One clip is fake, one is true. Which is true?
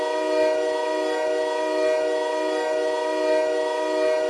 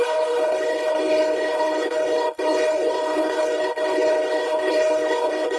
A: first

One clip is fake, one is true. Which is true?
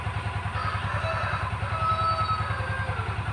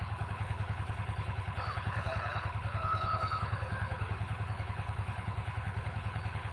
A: first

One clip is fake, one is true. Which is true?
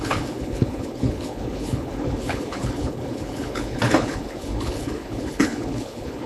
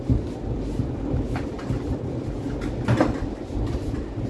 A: second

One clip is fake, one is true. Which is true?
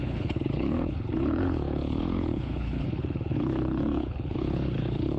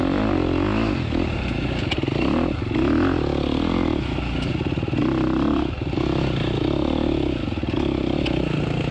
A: second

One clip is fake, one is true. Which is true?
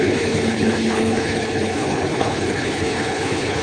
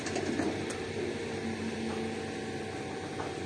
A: second